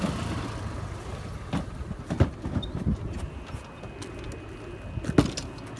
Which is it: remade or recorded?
recorded